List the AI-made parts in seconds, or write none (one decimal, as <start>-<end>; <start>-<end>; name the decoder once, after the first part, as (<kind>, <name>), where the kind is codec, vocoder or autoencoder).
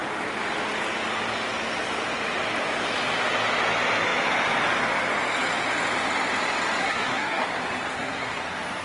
6.8-7.4 (codec, SNAC); 7.9-8.4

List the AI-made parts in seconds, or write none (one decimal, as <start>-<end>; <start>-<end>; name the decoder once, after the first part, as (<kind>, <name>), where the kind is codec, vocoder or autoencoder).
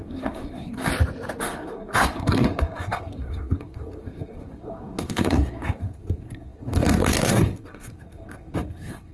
0.0-0.9 (codec, SNAC); 1.4-9.1